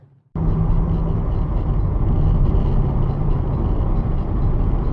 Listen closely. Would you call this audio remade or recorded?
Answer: recorded